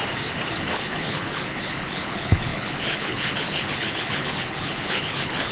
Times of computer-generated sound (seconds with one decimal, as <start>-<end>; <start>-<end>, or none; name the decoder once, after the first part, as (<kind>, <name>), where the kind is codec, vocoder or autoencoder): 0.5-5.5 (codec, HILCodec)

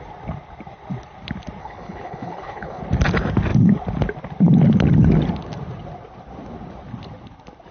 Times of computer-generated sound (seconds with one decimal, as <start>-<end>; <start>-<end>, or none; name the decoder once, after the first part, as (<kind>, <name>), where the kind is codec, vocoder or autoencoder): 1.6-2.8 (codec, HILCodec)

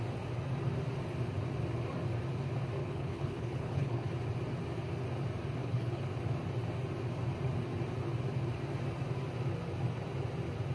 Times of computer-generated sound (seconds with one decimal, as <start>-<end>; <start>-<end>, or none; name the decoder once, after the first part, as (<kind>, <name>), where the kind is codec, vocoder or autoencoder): 2.8-4.1 (codec, HILCodec); 5.6-6.1

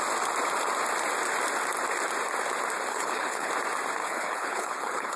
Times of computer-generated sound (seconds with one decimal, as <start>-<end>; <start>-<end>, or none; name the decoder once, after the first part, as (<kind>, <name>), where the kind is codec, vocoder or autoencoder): 2.9-3.5 (codec, HILCodec); 4.0-5.2

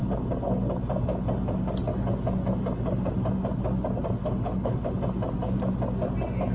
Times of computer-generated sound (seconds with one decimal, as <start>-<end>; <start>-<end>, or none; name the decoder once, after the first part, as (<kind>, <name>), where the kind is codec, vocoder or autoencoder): 4.2-4.9 (codec, HILCodec)

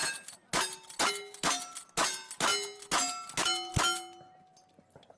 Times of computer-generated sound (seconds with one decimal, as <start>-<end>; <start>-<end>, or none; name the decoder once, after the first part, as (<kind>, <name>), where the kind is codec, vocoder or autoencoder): none

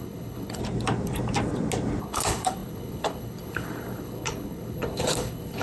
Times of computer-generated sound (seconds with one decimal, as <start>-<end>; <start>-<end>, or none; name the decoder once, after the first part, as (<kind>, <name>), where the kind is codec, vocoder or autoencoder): 0.0-0.6 (codec, HILCodec); 2.0-5.6